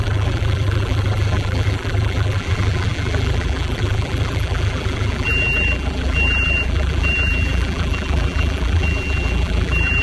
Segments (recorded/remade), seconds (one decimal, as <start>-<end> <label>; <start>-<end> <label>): 0.0-10.0 remade